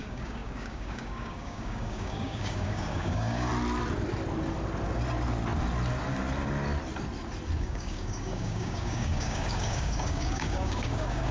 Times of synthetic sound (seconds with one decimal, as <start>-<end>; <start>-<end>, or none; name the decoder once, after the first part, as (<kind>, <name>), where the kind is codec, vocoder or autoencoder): 0.0-3.5 (codec, DAC); 7.6-11.3